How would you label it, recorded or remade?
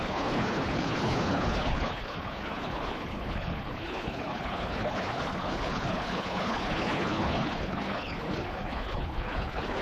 remade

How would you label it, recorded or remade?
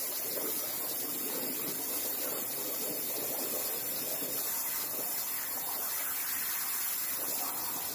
recorded